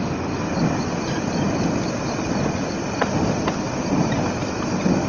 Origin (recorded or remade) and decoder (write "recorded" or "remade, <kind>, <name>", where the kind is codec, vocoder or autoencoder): recorded